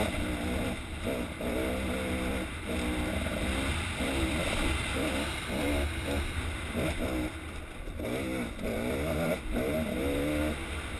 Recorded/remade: recorded